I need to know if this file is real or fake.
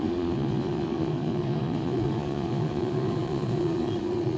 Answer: fake